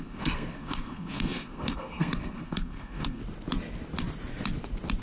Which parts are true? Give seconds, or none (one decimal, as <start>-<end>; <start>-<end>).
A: 3.2-5.0